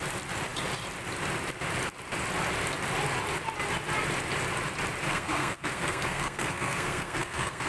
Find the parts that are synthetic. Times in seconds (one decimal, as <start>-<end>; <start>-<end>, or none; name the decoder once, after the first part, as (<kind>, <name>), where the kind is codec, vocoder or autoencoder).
5.1-7.7 (codec, SNAC)